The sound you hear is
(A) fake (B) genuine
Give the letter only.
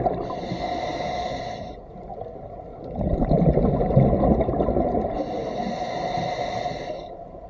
B